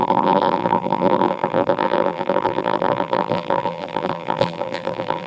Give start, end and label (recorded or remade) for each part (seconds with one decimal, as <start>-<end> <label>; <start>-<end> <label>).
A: 0.0-5.3 remade

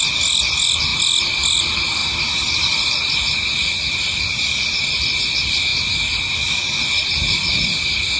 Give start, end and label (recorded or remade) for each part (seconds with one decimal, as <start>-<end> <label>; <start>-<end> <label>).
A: 0.0-8.2 recorded